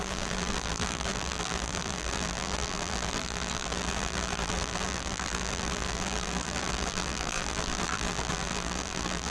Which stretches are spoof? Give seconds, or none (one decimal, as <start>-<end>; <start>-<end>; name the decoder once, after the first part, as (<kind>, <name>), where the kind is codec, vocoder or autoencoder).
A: 0.0-9.3 (vocoder, BigVGAN v2)